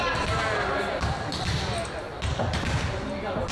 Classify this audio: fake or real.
real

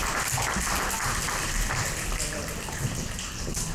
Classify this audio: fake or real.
real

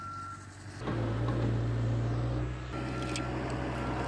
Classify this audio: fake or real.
real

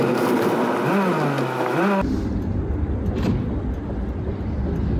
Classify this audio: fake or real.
real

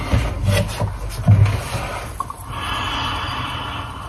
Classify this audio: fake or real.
real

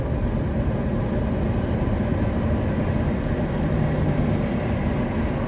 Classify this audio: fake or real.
real